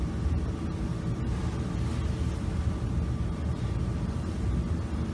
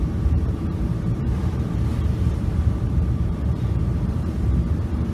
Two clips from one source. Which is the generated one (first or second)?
second